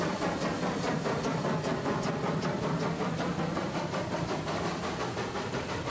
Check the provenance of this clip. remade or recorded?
recorded